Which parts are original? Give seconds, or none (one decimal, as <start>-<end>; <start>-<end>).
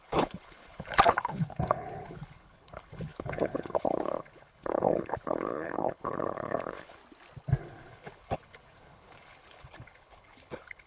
7.0-7.6